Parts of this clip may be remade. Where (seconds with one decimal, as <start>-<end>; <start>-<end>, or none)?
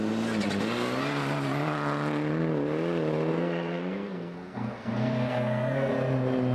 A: 3.3-5.9